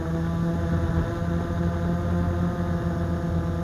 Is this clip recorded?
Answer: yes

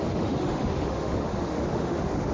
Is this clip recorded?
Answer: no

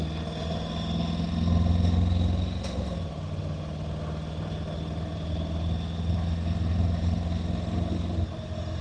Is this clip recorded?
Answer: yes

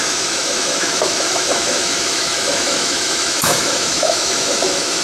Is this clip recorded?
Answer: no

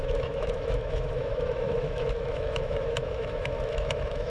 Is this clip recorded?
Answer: no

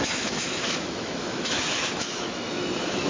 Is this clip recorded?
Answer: no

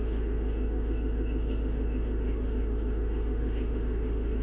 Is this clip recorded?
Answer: no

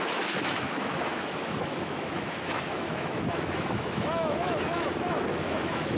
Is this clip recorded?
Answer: no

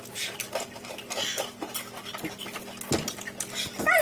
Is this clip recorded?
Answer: yes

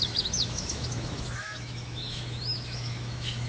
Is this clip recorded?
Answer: no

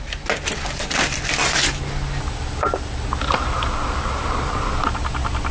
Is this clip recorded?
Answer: yes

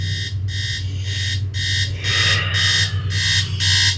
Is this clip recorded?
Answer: yes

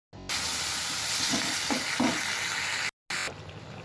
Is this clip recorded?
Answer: yes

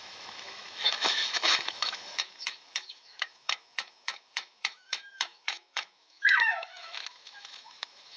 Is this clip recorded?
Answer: no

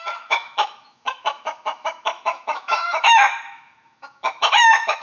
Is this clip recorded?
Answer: no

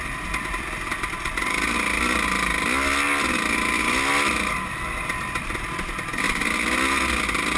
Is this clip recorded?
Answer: yes